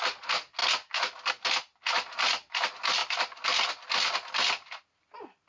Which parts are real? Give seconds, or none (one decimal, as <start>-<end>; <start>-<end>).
0.0-5.5

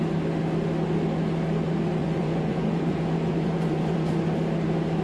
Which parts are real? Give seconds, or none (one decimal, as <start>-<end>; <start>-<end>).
0.0-2.0; 4.1-5.0

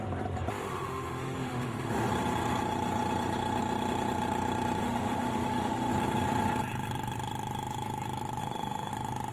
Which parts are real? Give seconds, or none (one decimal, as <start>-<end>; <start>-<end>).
0.0-0.6; 2.1-4.8; 5.9-8.4; 8.9-9.3

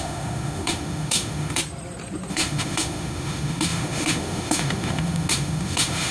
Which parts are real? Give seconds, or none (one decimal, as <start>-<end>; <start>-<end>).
1.6-2.3

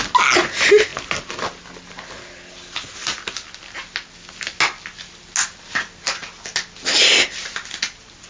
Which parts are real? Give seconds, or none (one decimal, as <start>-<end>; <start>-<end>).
0.0-8.3

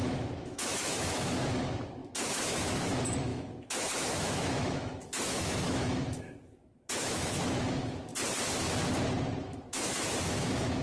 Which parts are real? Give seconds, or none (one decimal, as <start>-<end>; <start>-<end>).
8.1-9.4